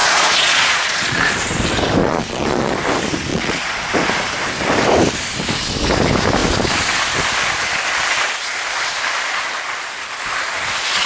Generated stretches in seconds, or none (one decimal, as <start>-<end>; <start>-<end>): 0.0-1.3; 2.0-2.7; 3.3-3.9